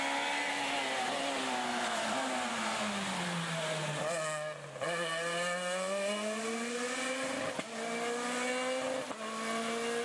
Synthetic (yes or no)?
no